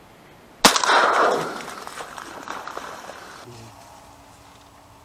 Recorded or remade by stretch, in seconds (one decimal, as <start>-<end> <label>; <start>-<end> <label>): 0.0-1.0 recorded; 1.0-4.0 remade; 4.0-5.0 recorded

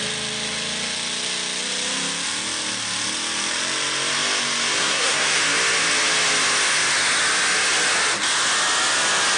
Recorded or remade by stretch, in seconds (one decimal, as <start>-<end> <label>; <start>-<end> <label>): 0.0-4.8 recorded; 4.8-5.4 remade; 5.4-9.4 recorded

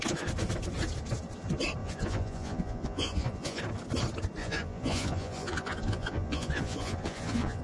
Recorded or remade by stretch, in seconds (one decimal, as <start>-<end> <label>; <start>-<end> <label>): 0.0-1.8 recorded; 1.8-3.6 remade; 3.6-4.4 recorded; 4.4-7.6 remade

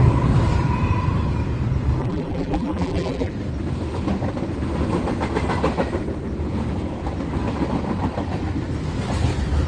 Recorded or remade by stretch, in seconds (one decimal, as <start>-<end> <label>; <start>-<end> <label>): 0.0-2.0 recorded; 2.0-3.3 remade; 3.3-9.7 recorded

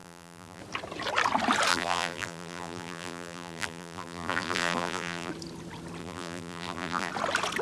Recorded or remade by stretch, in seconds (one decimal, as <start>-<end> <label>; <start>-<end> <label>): 0.0-0.6 remade; 0.6-1.7 recorded; 1.7-5.3 remade; 5.3-6.0 recorded; 6.0-7.1 remade; 7.1-7.6 recorded